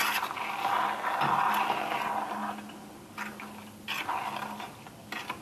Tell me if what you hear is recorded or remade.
recorded